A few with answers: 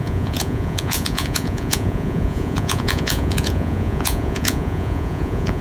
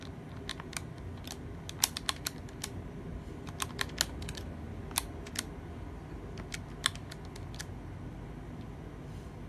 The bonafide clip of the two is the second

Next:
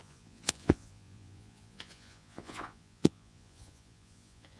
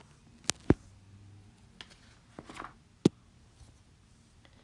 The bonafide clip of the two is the second